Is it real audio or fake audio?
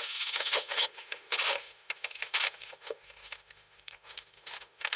fake